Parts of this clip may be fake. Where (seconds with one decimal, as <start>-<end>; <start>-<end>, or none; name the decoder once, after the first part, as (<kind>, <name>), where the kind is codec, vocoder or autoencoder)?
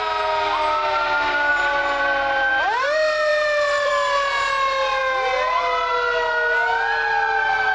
1.5-2.5 (vocoder, BigVGAN v2); 3.3-3.9